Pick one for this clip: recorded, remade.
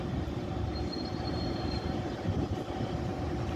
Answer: remade